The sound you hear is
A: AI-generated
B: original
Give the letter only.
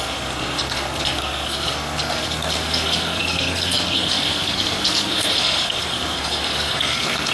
A